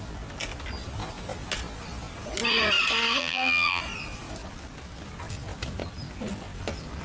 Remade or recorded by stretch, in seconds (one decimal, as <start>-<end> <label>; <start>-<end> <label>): 0.0-3.2 recorded; 3.2-3.8 remade; 3.8-7.0 recorded